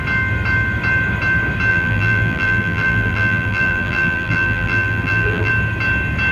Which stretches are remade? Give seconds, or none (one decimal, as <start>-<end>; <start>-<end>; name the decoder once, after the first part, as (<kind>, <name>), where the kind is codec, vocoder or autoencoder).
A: 1.7-5.5 (vocoder, BigVGAN v2)